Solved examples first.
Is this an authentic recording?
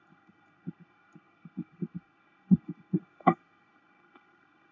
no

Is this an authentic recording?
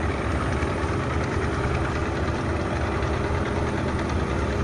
yes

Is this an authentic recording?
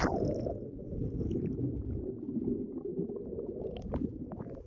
yes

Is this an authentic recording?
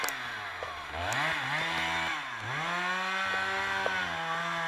yes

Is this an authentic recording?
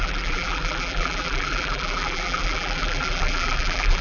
no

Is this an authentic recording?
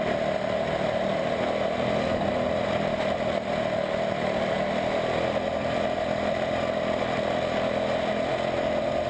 yes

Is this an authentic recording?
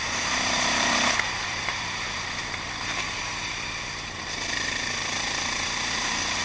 no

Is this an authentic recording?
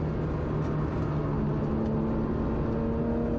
yes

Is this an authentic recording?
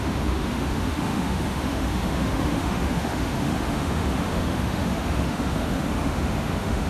no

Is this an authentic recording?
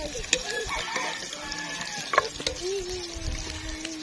yes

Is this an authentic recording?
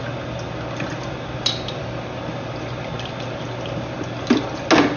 yes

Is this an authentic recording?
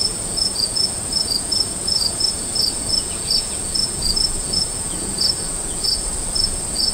no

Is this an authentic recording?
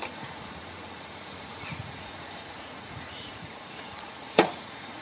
no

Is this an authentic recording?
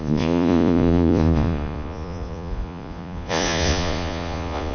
no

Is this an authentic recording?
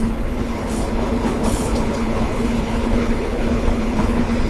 no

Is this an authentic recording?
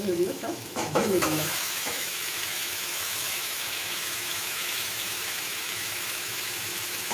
no